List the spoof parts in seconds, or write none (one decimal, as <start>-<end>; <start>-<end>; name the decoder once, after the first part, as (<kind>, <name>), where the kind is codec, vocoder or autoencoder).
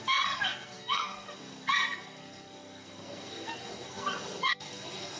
0.0-5.2 (codec, SNAC)